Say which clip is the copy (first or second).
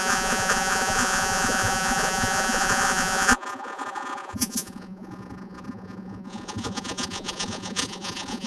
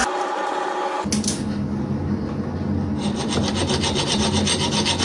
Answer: first